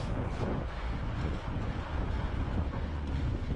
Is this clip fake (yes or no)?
yes